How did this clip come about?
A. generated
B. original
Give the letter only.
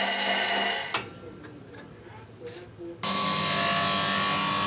B